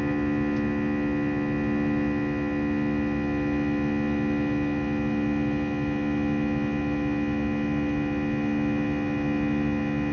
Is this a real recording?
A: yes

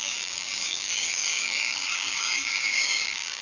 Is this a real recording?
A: no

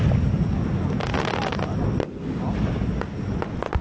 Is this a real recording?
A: yes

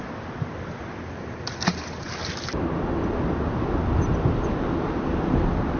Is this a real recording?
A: yes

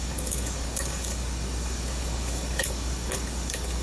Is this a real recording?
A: no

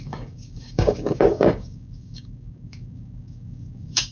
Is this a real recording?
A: no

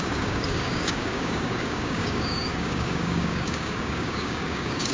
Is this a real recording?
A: no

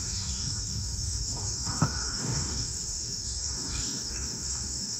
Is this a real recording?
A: no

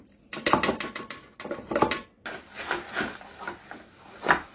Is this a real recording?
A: yes